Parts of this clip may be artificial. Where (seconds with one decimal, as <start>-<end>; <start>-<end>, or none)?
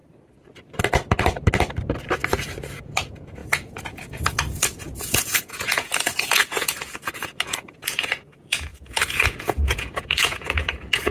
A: 2.8-11.1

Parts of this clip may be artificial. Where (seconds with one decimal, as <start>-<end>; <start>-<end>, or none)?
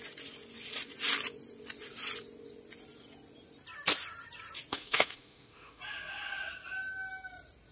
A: 4.7-5.8